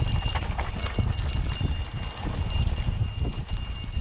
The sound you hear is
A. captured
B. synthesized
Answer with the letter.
A